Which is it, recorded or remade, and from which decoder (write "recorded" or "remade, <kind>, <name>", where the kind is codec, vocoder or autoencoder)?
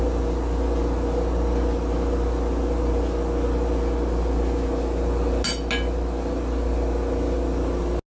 recorded